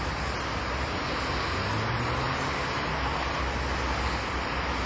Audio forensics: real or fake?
real